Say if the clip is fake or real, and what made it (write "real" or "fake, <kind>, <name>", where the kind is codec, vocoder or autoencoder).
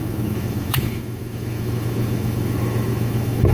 fake, autoencoder, DAC-VAE